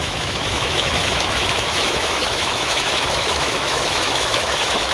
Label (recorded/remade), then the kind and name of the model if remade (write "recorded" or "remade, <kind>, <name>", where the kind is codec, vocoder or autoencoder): remade, autoencoder, DAC-VAE